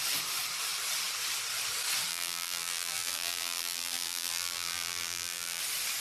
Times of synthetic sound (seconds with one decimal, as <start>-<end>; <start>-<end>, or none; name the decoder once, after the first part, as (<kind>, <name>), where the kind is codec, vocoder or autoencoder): 2.1-5.6 (vocoder, BigVGAN v2)